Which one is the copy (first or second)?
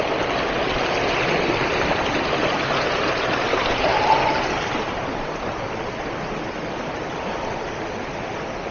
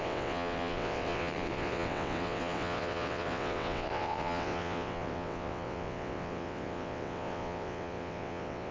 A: second